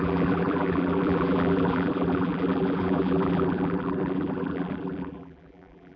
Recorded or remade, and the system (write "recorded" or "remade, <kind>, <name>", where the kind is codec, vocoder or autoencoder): remade, vocoder, BigVGAN v2